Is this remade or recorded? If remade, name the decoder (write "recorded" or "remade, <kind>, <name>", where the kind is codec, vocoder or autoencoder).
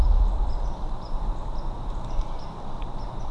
recorded